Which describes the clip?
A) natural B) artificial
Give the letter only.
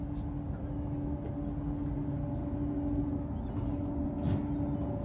A